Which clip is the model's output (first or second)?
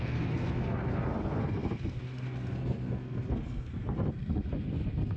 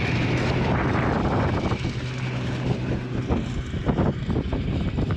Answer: first